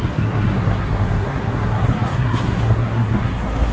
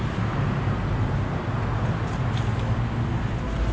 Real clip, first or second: second